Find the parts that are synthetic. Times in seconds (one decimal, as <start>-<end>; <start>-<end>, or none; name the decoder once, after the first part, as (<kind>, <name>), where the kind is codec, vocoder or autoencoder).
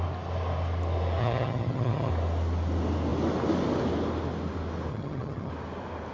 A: 1.2-2.1 (vocoder, HiFi-GAN); 4.9-5.5